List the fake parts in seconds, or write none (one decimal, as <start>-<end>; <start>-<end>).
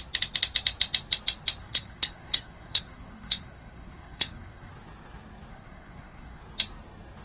1.6-4.7; 5.5-6.4